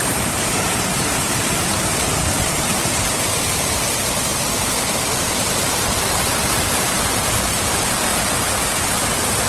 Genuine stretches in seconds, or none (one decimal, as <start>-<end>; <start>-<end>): 1.7-2.4; 8.1-9.5

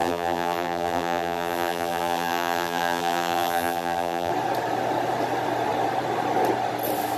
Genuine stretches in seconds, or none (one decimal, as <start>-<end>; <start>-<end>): 4.3-7.2

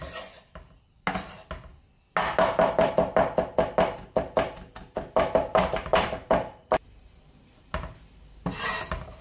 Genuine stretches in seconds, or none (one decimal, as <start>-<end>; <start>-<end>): 0.0-5.9; 7.7-9.2

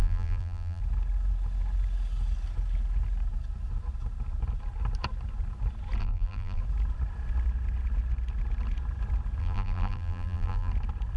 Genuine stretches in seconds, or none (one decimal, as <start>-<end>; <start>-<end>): 0.8-6.0; 6.6-9.4; 10.7-11.2

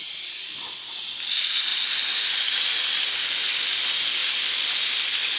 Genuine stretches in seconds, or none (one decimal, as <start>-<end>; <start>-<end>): 0.0-1.7; 3.0-5.4

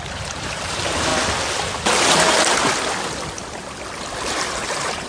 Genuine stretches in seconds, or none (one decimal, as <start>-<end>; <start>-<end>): 1.1-4.2